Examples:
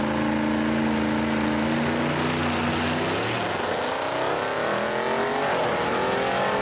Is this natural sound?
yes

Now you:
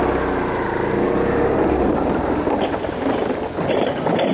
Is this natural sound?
yes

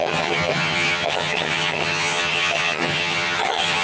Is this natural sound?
no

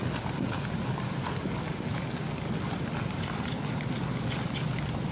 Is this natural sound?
yes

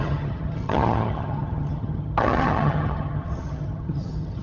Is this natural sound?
no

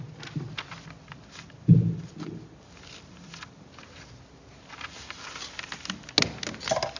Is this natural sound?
yes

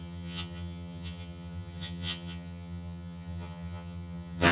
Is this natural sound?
no